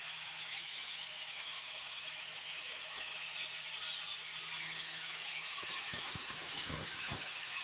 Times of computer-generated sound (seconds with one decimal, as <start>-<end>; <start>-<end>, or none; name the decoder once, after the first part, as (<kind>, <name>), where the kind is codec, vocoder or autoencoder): 0.0-3.1 (autoencoder, DAC-VAE); 4.6-7.6